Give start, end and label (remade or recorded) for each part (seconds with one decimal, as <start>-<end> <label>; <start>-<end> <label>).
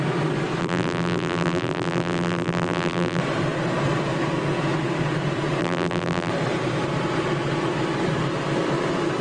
0.0-0.6 recorded; 0.6-3.2 remade; 3.2-5.6 recorded; 5.6-6.3 remade; 6.3-9.2 recorded